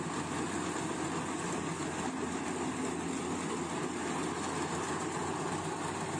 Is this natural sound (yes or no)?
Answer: yes